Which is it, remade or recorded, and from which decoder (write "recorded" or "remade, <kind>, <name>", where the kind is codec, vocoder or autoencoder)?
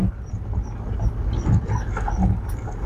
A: recorded